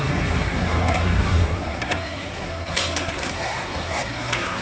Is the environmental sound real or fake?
fake